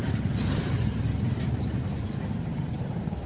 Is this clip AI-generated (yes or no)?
yes